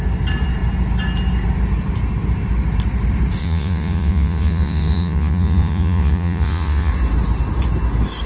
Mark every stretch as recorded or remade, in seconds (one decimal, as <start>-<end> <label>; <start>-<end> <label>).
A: 0.0-3.4 recorded; 3.4-6.9 remade; 6.9-8.3 recorded